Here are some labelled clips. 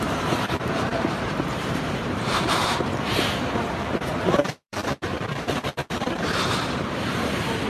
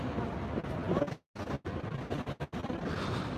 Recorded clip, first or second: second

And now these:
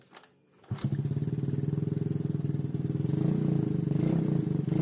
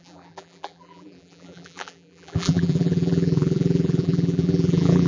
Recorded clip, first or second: first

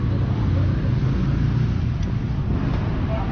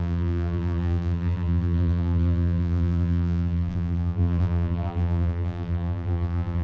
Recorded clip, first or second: first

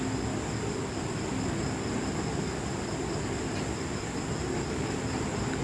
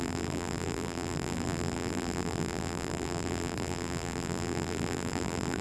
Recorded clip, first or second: first